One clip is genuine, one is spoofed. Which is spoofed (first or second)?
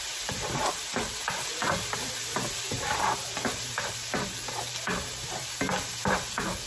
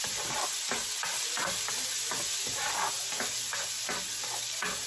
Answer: first